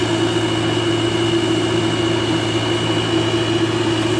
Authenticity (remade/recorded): recorded